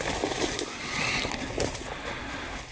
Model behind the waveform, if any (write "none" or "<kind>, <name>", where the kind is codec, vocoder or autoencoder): none